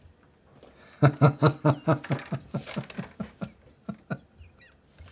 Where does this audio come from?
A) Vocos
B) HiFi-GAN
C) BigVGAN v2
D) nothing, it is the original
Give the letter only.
D